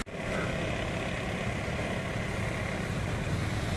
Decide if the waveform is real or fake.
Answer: real